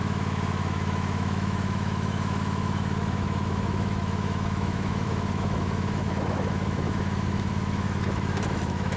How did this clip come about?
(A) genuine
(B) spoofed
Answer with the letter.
B